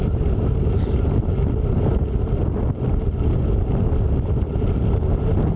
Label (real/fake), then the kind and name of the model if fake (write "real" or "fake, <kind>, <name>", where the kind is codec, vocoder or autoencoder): real